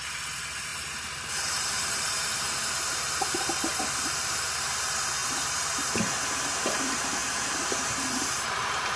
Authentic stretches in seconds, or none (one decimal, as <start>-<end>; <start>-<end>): 3.7-4.5